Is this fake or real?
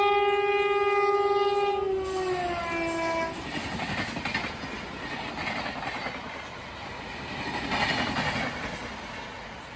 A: real